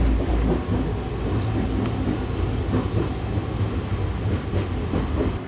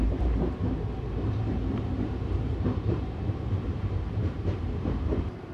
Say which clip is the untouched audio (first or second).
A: first